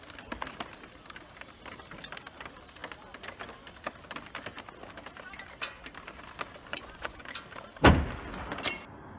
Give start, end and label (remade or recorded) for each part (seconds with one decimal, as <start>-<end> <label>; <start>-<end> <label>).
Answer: 0.0-6.7 recorded; 6.7-7.2 remade; 7.2-9.2 recorded